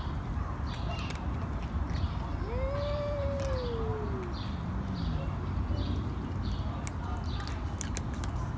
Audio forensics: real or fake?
real